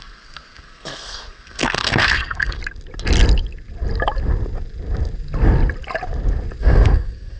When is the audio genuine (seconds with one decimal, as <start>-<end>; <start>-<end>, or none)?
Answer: 2.6-6.6